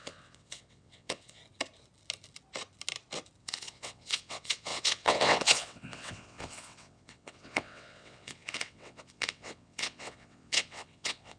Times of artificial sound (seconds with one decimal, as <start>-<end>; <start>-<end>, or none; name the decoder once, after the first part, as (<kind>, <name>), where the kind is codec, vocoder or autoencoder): 0.0-1.4 (vocoder, WaveNeXt); 3.4-11.4